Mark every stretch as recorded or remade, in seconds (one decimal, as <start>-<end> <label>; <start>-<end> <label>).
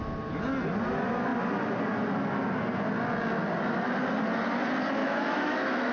0.0-5.0 recorded; 5.0-5.9 remade